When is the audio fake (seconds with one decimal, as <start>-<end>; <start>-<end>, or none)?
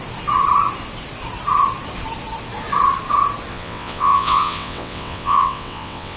3.5-6.2